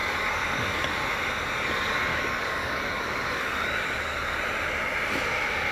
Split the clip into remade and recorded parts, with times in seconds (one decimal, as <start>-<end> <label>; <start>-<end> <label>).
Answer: 0.0-0.9 remade; 0.9-2.1 recorded; 2.1-4.4 remade; 4.4-5.7 recorded